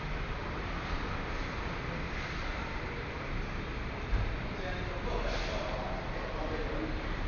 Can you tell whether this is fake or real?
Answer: real